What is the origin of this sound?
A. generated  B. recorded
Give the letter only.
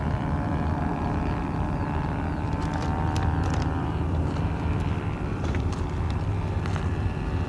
A